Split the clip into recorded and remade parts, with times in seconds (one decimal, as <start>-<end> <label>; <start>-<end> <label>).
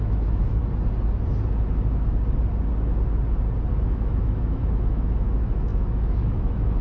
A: 0.0-0.6 remade; 0.6-3.7 recorded; 3.7-6.8 remade